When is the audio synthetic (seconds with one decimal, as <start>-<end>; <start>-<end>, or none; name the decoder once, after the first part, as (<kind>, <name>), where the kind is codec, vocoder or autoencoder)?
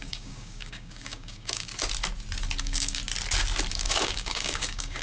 0.0-1.7 (codec, DAC); 2.6-3.0; 3.7-5.0